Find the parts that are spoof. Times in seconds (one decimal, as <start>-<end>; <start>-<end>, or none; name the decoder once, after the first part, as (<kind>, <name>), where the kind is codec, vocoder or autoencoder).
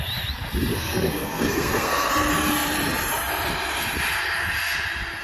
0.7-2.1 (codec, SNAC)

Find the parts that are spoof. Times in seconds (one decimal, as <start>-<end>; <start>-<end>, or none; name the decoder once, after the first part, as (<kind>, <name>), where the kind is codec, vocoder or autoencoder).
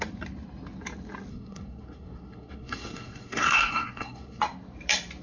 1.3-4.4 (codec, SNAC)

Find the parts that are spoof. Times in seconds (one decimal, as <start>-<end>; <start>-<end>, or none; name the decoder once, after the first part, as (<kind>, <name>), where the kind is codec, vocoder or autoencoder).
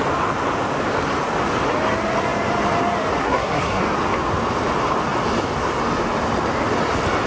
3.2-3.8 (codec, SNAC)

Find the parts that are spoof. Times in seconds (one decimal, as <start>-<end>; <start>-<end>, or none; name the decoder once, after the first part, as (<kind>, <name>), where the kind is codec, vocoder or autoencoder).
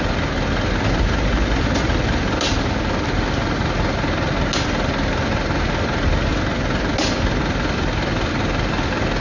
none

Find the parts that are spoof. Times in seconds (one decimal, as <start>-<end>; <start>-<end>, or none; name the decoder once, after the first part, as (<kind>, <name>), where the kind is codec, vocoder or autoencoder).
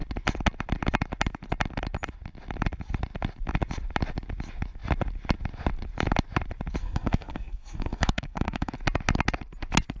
6.8-8.7 (codec, SNAC)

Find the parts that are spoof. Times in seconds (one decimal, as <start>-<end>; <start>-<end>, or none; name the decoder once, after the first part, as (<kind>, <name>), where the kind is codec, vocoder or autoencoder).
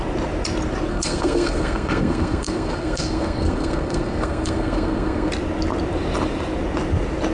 0.9-5.3 (codec, SNAC)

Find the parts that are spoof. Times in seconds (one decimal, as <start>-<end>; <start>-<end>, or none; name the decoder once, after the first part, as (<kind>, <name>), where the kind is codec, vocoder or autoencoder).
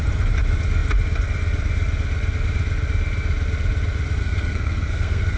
4.2-5.4 (codec, SNAC)